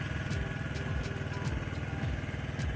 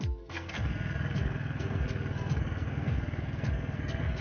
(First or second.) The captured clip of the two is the first